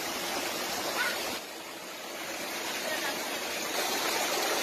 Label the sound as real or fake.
real